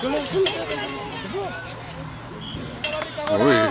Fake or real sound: real